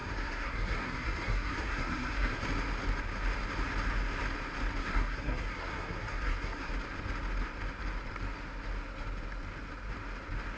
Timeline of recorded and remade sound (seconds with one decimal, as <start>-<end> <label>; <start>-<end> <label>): 0.0-2.4 remade; 2.4-4.8 recorded; 4.8-6.7 remade; 6.7-10.6 recorded